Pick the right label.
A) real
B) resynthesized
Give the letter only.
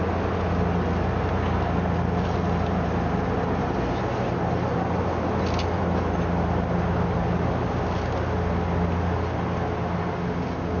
A